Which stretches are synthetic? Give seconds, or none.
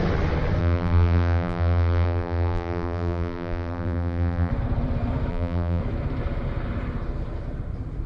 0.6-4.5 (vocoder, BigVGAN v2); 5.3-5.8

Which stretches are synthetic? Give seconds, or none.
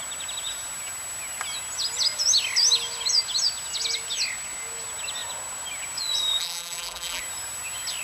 6.4-7.2 (vocoder, BigVGAN v2)